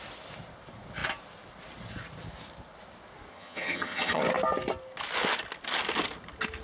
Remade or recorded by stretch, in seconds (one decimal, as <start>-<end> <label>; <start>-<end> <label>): 0.0-3.3 recorded; 3.3-4.2 remade; 4.2-6.6 recorded